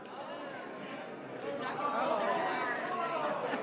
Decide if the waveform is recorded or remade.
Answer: recorded